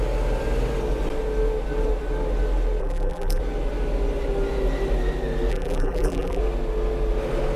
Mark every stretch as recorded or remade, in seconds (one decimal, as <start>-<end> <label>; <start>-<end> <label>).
0.0-2.8 recorded; 2.8-3.4 remade; 3.4-5.5 recorded; 5.5-6.4 remade; 6.4-7.6 recorded